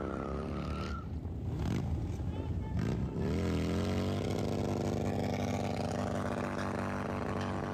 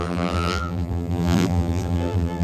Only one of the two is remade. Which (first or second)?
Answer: second